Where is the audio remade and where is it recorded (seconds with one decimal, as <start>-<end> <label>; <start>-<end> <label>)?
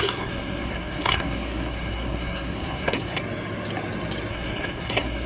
0.0-3.2 remade; 3.2-4.3 recorded; 4.3-5.3 remade